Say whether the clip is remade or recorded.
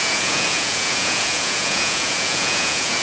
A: remade